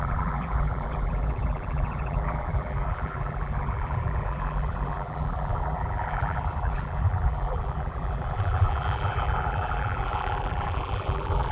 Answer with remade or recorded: remade